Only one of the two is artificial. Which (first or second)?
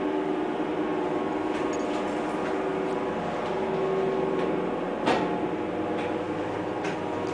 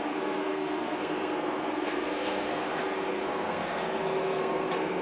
second